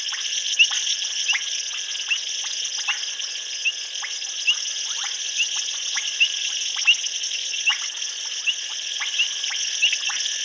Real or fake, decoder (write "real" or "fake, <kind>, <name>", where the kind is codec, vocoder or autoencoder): real